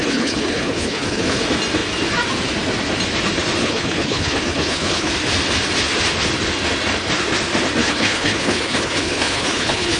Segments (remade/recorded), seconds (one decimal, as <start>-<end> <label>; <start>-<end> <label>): 0.0-1.4 remade; 1.4-3.6 recorded; 3.6-5.1 remade; 5.1-7.8 recorded; 7.8-10.0 remade